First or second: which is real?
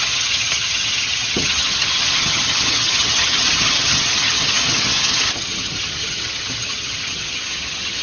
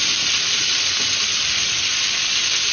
second